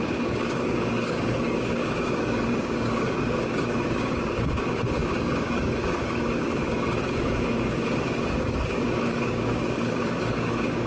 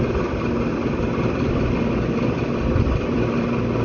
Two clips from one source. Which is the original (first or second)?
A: second